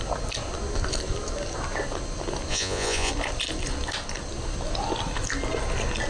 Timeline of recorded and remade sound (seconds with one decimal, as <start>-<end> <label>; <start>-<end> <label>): 0.0-2.5 recorded; 2.5-3.1 remade; 3.1-6.1 recorded